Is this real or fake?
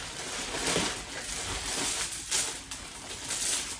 real